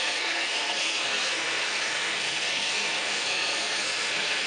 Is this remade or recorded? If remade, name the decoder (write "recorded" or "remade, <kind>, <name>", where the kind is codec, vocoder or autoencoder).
remade, codec, SNAC